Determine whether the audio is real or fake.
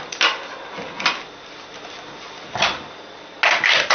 real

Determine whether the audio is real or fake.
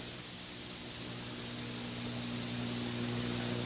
real